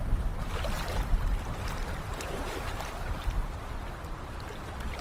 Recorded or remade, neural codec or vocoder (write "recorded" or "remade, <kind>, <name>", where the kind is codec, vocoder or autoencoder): remade, vocoder, BigVGAN v2